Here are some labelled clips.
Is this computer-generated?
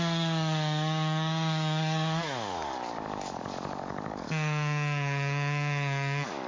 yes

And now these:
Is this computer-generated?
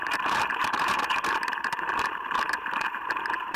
yes